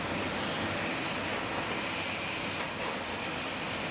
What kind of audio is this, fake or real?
real